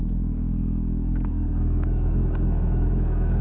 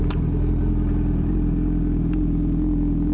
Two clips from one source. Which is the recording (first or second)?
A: second